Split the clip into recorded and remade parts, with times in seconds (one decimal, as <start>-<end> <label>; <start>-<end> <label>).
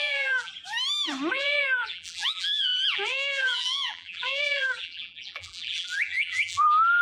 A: 0.0-0.5 remade; 0.5-1.3 recorded; 1.3-7.0 remade